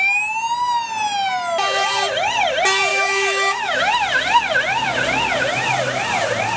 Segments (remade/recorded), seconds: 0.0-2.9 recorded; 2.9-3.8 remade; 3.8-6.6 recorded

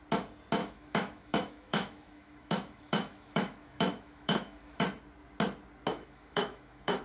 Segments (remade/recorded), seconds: 0.0-0.6 recorded; 0.6-4.8 remade; 4.8-5.9 recorded; 5.9-7.0 remade